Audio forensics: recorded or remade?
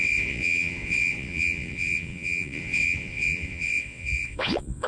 remade